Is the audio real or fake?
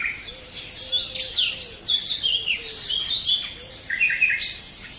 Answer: real